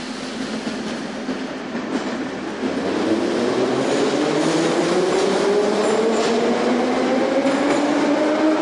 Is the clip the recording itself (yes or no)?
yes